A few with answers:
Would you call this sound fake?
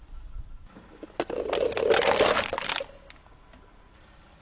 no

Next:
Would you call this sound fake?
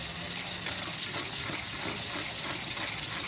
no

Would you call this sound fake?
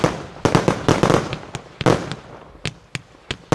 no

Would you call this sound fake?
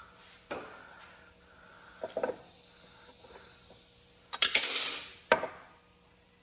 no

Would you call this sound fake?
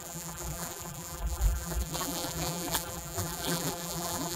yes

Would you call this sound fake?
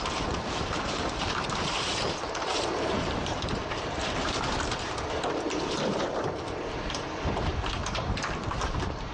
yes